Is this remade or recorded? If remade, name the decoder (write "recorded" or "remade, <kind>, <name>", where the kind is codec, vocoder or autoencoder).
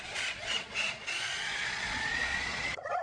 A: remade, vocoder, Vocos